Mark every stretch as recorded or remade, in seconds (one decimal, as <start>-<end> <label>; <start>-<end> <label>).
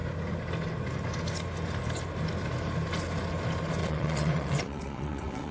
0.0-3.8 recorded; 3.8-5.5 remade